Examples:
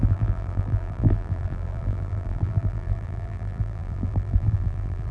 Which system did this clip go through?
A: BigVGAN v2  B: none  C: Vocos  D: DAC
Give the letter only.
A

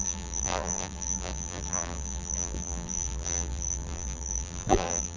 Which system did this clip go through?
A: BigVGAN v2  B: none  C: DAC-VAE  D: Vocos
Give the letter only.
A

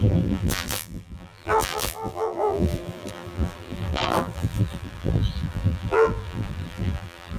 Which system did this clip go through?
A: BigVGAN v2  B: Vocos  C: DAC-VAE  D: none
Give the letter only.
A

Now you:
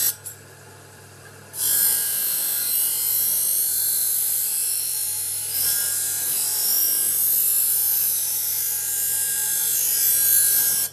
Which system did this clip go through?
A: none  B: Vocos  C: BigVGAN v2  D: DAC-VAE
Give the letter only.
C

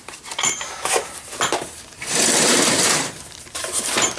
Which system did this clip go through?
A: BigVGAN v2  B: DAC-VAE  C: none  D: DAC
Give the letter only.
A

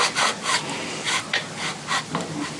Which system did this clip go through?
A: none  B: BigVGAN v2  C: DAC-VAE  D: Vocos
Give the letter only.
A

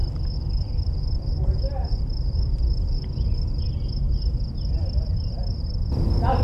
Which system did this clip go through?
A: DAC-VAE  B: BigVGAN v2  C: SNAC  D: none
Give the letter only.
D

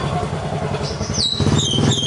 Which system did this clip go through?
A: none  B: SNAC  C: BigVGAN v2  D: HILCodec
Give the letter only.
A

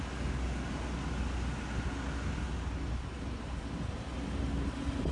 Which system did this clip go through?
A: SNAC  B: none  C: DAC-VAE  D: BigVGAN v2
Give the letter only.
B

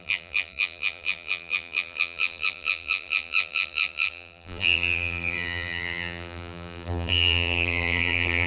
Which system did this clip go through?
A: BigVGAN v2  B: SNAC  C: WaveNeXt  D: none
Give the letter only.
A